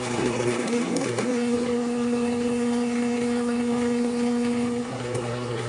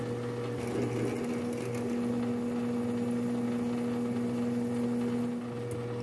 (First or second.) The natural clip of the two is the second